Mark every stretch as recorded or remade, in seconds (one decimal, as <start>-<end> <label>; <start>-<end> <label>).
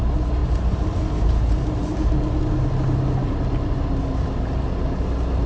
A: 0.0-5.5 recorded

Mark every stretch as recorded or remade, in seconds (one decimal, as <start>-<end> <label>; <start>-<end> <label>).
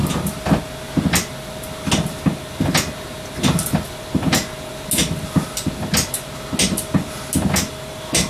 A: 0.0-8.3 recorded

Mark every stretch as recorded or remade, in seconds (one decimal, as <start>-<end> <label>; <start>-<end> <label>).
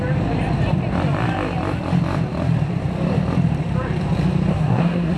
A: 0.0-4.5 recorded; 4.5-5.2 remade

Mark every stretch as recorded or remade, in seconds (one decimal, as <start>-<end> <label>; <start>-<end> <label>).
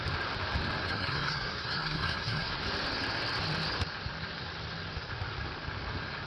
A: 0.0-0.8 recorded; 0.8-2.6 remade; 2.6-6.3 recorded